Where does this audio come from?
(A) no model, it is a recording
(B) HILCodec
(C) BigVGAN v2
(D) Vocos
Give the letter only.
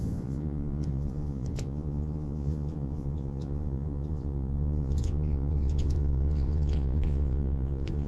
D